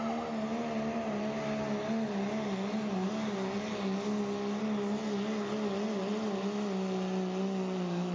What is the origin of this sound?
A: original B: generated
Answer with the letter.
A